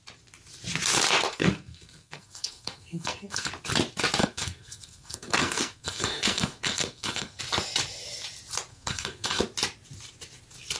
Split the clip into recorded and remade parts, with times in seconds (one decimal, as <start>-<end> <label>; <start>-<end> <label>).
0.0-1.3 recorded; 1.3-3.5 remade; 3.5-4.2 recorded; 4.2-7.4 remade; 7.4-8.7 recorded; 8.7-9.4 remade; 9.4-10.8 recorded